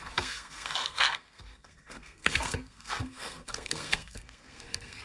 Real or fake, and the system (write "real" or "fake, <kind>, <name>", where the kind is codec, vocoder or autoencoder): fake, codec, SNAC